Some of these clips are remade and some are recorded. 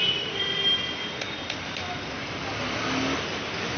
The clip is recorded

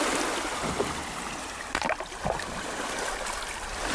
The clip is recorded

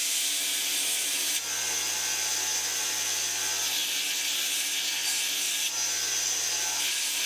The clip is recorded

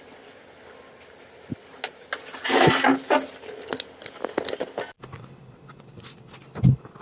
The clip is recorded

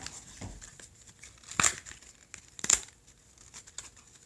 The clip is recorded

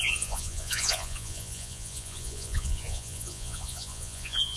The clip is remade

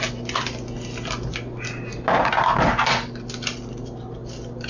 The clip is recorded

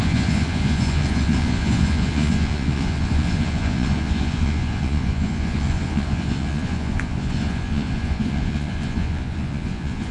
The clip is remade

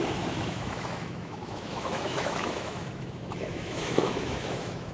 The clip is remade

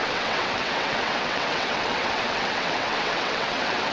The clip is remade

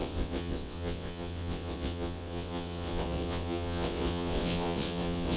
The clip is remade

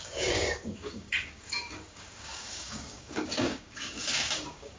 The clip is remade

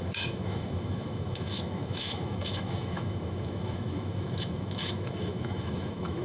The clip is remade